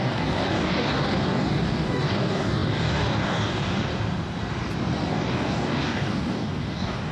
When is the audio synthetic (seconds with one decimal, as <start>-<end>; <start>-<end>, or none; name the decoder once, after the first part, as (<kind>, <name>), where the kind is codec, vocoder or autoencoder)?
0.0-3.9 (codec, DAC); 5.1-7.1